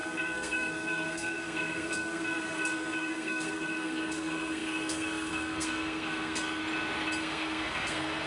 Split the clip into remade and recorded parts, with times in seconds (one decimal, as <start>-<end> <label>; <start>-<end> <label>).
0.0-6.6 remade; 6.6-7.2 recorded; 7.2-8.3 remade